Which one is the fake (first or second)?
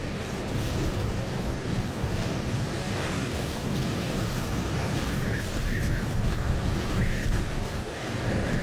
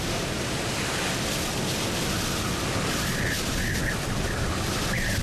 first